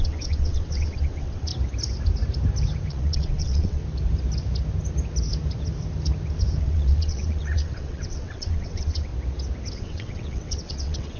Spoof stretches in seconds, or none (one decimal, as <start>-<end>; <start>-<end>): 0.0-1.5; 2.9-3.8; 6.6-9.1; 9.7-11.2